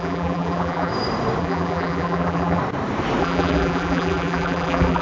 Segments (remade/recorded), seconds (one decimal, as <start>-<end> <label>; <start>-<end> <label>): 0.0-0.9 remade; 0.9-1.4 recorded; 1.4-2.6 remade; 2.6-3.2 recorded; 3.2-5.0 remade